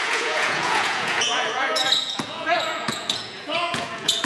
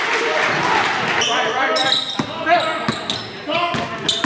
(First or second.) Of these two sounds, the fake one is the first